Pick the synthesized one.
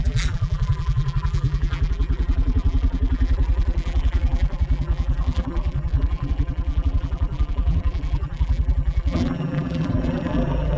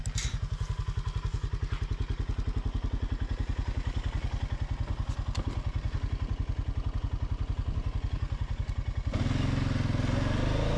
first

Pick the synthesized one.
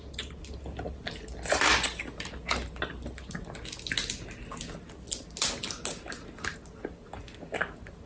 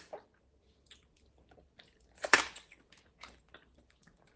second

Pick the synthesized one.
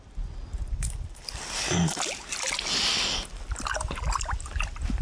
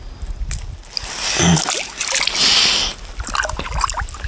first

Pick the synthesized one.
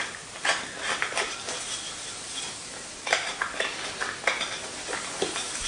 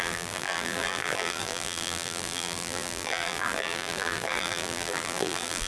second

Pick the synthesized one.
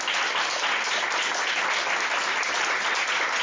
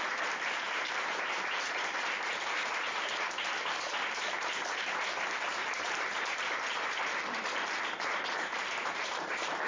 second